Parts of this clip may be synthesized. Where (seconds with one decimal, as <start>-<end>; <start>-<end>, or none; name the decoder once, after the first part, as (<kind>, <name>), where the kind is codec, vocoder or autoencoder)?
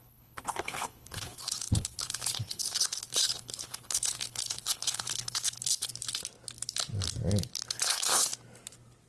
0.0-5.9 (codec, HILCodec); 7.7-8.3